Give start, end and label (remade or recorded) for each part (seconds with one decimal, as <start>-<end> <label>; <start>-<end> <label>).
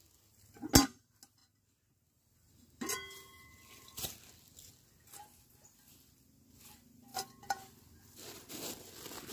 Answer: 0.0-9.3 recorded